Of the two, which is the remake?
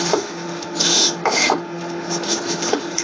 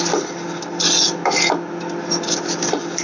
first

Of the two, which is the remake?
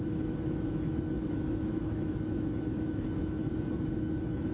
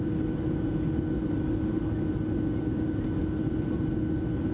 first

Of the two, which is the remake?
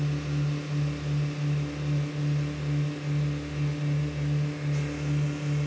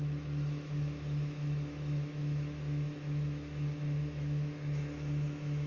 second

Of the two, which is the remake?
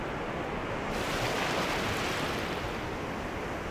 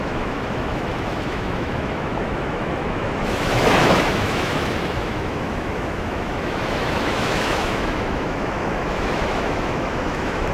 second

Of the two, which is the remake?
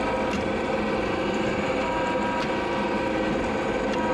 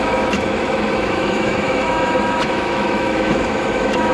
second